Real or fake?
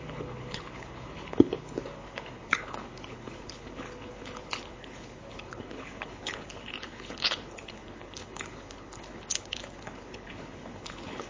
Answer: fake